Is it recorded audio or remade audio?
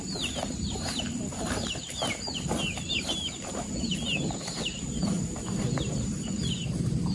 remade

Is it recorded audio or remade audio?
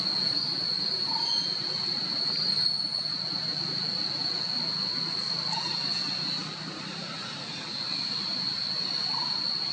recorded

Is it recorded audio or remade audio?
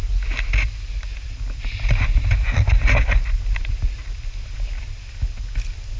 recorded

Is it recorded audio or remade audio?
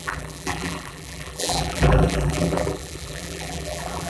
remade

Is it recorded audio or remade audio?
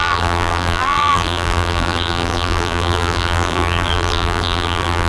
remade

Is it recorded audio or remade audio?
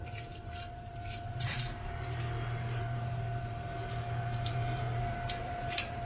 remade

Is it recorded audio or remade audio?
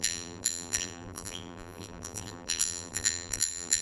remade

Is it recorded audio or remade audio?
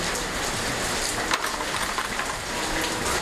recorded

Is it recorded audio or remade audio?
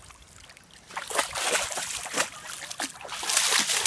recorded